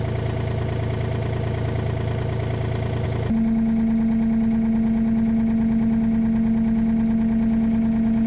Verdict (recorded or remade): recorded